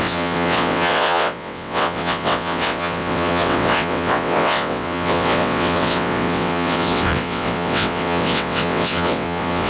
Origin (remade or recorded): remade